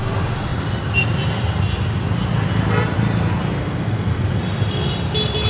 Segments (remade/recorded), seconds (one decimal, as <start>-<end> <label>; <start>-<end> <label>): 0.0-3.6 recorded; 3.6-4.4 remade; 4.4-5.5 recorded